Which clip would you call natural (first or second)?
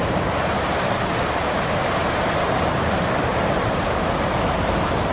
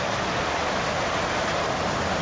second